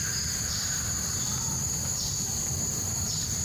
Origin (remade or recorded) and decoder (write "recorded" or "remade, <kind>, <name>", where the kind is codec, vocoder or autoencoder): remade, vocoder, BigVGAN v2